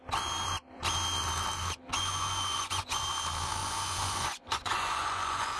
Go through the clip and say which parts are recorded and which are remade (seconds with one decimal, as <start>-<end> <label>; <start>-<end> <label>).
0.0-1.9 recorded; 1.9-3.0 remade; 3.0-3.6 recorded; 3.6-5.6 remade